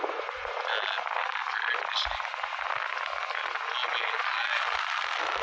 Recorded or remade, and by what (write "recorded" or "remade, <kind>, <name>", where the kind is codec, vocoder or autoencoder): recorded